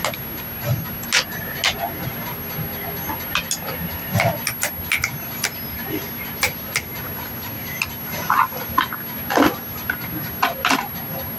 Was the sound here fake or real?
real